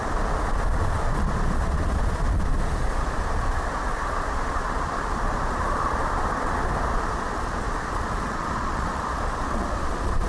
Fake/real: fake